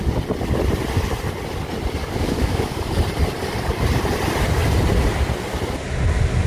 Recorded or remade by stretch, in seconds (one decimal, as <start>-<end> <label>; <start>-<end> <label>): 0.0-2.0 recorded; 2.0-3.0 remade; 3.0-6.5 recorded